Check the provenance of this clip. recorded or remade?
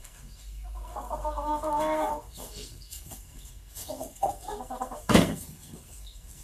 remade